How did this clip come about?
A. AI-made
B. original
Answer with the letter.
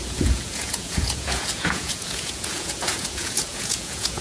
A